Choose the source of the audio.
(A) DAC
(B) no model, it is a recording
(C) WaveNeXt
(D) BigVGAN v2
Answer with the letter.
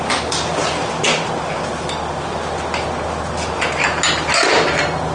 B